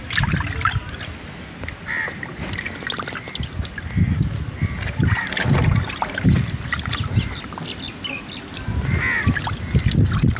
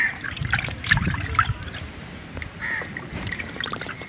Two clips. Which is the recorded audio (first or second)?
first